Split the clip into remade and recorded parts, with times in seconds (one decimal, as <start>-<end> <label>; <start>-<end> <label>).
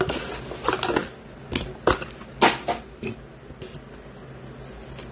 0.0-5.1 recorded